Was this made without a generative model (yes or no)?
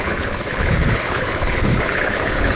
no